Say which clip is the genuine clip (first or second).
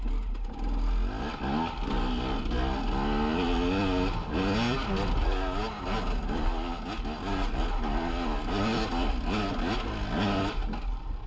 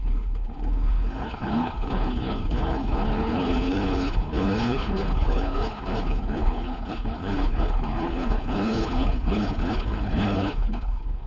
first